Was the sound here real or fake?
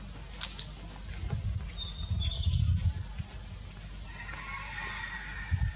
real